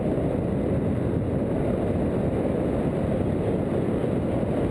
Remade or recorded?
recorded